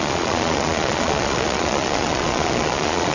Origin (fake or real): fake